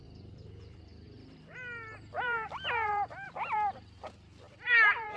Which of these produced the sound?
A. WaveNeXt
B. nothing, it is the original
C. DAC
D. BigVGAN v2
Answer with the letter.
D